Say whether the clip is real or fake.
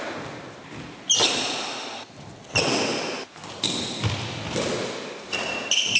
real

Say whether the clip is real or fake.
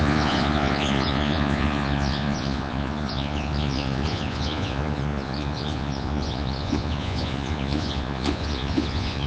fake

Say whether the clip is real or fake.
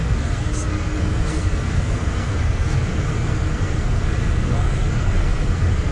fake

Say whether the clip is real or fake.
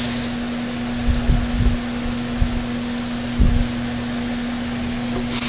real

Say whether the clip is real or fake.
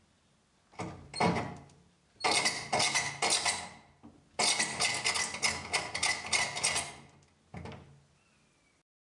real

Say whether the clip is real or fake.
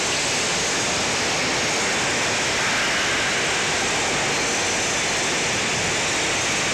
real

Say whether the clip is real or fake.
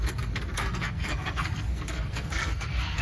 fake